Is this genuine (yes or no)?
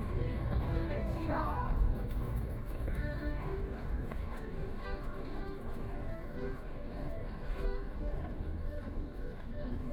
no